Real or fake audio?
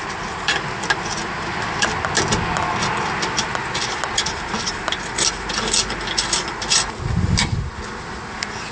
real